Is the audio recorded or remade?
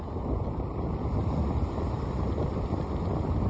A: recorded